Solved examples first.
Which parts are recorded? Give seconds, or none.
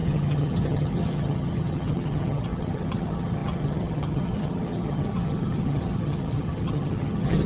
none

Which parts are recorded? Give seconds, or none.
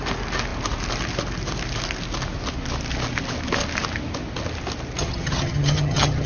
0.0-5.0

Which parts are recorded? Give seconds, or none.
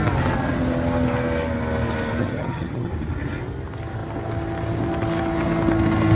0.0-2.2; 2.9-6.2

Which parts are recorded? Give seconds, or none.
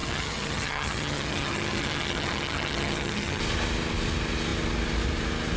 3.4-5.6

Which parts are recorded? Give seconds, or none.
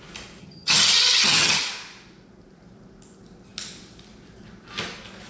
0.0-0.4; 1.7-5.3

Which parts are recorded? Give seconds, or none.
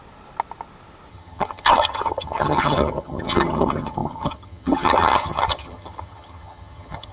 0.0-1.1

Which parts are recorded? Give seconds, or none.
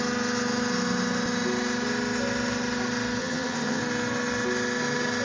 0.0-3.2; 3.8-5.2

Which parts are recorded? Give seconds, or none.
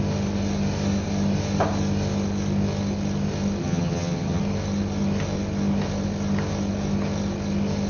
0.0-3.6; 4.4-7.9